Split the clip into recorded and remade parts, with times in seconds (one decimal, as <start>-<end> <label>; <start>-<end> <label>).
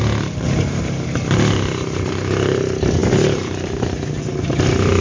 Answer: 0.0-5.0 recorded